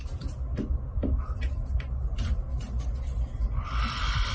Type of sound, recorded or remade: recorded